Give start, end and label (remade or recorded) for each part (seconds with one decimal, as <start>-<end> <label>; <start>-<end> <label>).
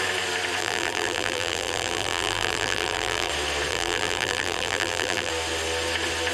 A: 0.0-0.6 recorded; 0.6-3.3 remade; 3.3-3.7 recorded; 3.7-5.3 remade; 5.3-6.3 recorded